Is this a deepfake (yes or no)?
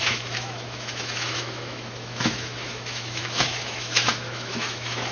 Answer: yes